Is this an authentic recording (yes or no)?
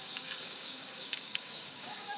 no